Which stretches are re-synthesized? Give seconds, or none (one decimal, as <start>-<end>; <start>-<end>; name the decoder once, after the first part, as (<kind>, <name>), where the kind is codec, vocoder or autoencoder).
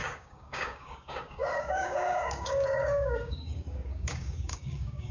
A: 0.0-5.1 (codec, DAC)